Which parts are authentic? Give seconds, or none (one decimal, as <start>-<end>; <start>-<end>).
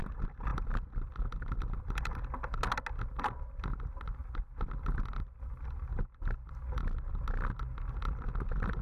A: 0.0-0.5; 2.2-4.2; 7.0-8.8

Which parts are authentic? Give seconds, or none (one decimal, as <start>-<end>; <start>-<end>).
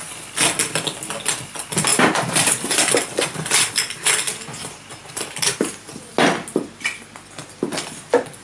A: 0.0-1.9; 3.7-4.3; 6.1-8.4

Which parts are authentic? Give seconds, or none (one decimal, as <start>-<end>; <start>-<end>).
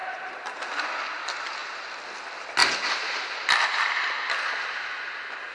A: 0.8-5.5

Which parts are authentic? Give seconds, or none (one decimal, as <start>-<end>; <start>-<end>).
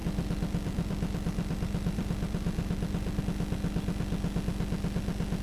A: 3.2-5.4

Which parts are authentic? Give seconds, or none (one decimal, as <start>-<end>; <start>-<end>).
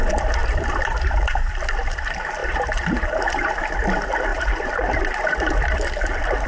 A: 0.0-0.4; 1.5-2.4; 3.6-4.3; 5.5-6.5